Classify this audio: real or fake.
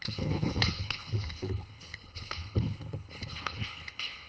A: fake